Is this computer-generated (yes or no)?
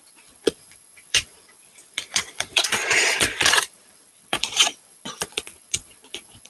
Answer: yes